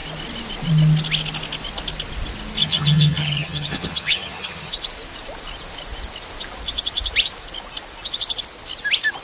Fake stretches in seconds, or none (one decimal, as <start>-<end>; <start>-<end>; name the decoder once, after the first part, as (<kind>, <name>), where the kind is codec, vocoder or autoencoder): 2.6-4.7 (vocoder, HiFi-GAN)